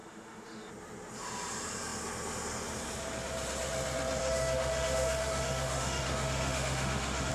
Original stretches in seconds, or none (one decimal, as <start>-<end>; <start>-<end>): 0.7-4.2